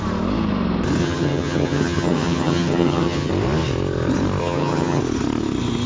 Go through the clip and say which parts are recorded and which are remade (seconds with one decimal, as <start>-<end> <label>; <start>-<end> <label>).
0.0-1.0 recorded; 1.0-3.3 remade; 3.3-4.4 recorded; 4.4-5.0 remade; 5.0-5.9 recorded